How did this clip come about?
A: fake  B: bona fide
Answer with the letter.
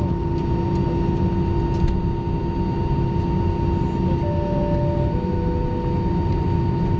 B